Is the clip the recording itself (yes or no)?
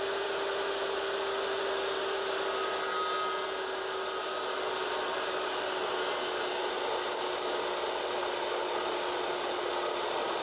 yes